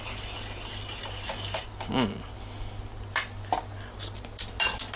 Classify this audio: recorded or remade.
recorded